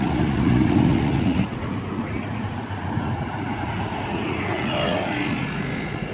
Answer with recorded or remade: remade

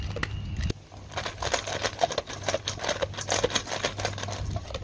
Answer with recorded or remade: recorded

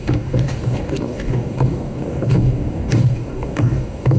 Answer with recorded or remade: remade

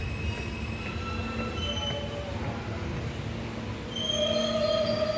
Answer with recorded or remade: recorded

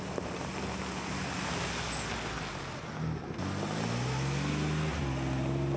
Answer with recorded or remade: recorded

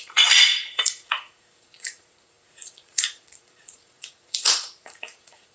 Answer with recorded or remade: remade